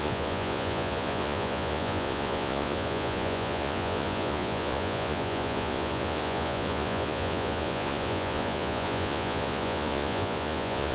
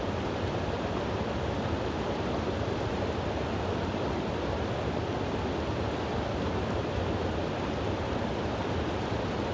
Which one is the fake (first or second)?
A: first